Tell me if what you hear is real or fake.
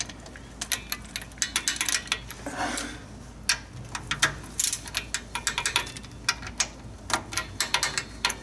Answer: real